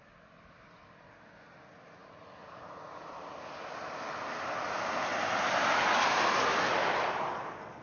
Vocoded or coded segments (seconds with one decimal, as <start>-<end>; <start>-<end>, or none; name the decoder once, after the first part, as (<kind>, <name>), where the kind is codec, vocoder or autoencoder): 2.0-3.0 (vocoder, BigVGAN v2)